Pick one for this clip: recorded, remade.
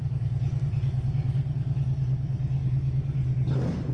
remade